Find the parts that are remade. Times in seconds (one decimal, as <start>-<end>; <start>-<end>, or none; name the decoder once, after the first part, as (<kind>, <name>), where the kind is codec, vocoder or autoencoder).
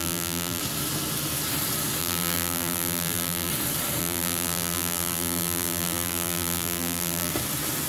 0.0-0.6 (vocoder, BigVGAN v2); 2.0-3.5; 4.0-7.3